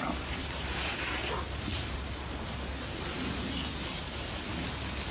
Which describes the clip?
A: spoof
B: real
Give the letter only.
B